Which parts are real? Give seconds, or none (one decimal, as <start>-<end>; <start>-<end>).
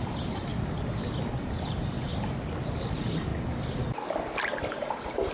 0.5-1.3; 2.1-2.8; 3.3-4.7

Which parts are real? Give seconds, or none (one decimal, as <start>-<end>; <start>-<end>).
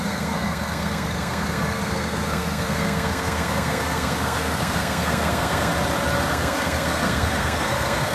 5.7-6.3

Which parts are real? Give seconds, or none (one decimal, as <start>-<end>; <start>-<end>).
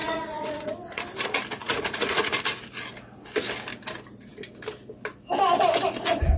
1.0-1.6; 2.3-6.4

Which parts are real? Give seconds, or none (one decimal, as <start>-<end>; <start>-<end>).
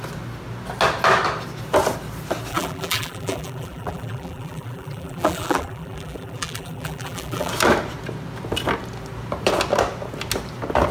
0.0-2.5; 7.5-10.9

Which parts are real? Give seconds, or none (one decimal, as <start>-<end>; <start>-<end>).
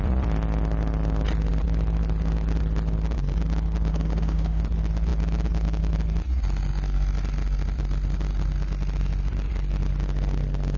0.0-3.9; 4.6-10.8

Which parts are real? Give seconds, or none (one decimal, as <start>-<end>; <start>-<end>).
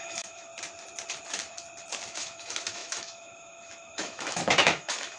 0.5-2.1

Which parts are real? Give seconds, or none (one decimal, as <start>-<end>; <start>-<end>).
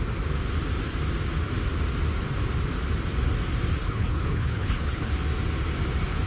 0.0-3.8; 5.1-6.3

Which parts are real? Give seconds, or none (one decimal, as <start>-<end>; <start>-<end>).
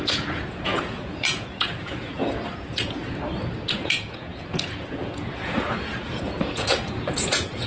3.0-3.7